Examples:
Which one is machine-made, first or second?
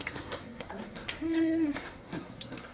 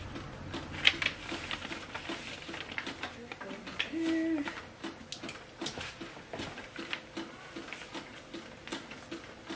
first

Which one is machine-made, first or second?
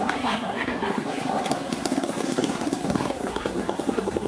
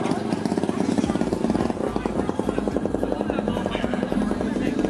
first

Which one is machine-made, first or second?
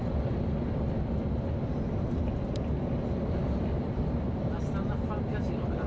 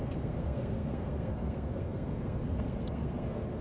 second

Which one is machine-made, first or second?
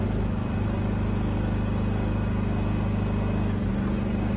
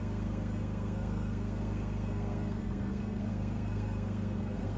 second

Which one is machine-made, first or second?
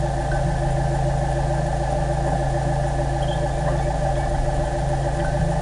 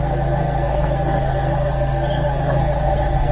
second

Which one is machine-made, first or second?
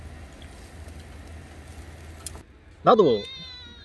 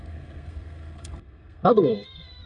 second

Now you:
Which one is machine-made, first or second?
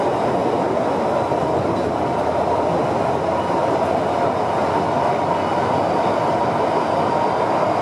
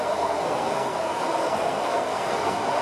second